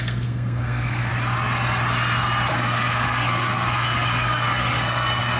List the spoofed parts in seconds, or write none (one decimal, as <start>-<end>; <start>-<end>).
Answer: 0.0-1.1; 2.5-5.4